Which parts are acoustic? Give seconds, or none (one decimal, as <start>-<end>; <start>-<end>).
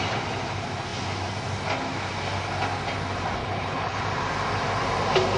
0.0-3.4; 4.0-5.4